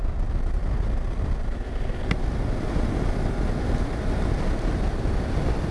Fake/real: real